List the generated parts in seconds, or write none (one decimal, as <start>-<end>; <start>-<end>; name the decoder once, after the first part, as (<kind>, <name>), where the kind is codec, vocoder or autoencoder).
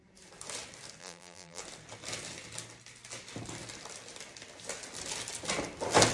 1.0-1.6 (vocoder, BigVGAN v2)